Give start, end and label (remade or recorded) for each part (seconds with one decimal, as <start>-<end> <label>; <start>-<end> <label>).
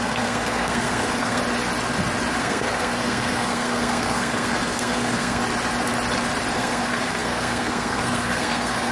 0.0-1.4 remade; 1.4-2.4 recorded; 2.4-5.4 remade; 5.4-6.5 recorded; 6.5-8.9 remade